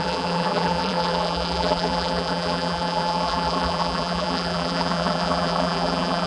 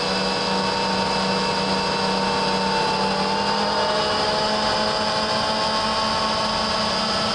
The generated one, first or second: first